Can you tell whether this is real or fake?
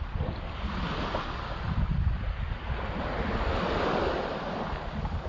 real